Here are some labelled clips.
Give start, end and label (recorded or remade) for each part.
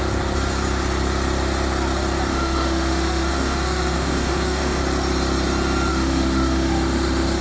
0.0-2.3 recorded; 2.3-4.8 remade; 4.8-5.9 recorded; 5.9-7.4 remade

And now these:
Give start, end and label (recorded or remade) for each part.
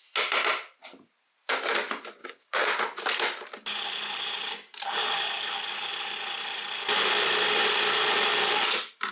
0.0-2.2 recorded; 2.2-2.8 remade; 2.8-9.1 recorded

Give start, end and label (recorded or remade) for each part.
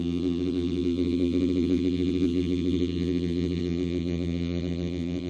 0.0-5.3 remade